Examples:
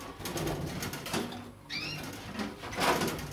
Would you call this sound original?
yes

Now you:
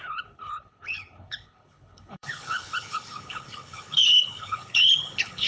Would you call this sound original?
no